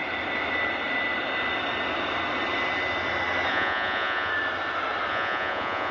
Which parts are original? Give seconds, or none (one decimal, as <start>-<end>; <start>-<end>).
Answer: 0.0-3.5; 4.3-5.1